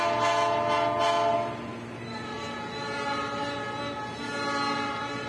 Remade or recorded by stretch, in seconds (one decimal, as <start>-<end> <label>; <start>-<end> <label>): 0.0-5.3 recorded